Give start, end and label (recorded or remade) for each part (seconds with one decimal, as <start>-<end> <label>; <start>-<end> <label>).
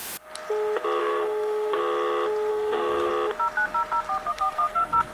0.0-1.0 recorded; 1.0-1.8 remade; 1.8-2.5 recorded; 2.5-3.1 remade; 3.1-4.3 recorded; 4.3-5.1 remade